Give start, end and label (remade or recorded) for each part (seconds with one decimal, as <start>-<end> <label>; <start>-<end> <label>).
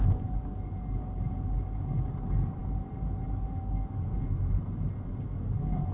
0.0-2.6 remade; 2.6-3.3 recorded; 3.3-4.1 remade; 4.1-5.2 recorded; 5.2-5.9 remade